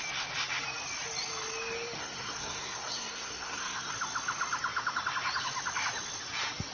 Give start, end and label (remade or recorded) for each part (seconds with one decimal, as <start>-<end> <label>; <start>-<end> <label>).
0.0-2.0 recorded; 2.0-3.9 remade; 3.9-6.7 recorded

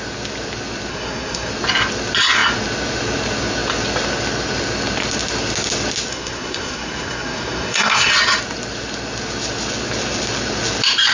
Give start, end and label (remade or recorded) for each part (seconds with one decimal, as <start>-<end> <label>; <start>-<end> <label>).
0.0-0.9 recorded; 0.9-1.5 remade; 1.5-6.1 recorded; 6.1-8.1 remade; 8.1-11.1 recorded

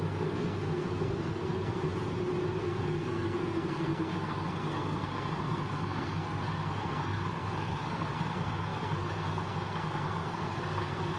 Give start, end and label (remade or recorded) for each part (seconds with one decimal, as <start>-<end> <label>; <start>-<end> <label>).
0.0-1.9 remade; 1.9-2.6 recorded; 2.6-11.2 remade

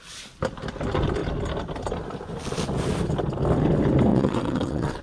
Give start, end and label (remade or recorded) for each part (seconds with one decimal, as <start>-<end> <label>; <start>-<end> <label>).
0.0-4.1 recorded; 4.1-5.0 remade